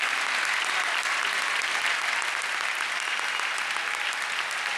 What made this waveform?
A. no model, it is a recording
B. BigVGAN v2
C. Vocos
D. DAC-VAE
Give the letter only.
A